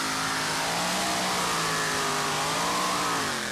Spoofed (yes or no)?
no